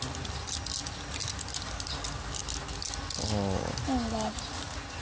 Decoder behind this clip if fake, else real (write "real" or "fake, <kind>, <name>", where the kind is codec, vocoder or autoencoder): real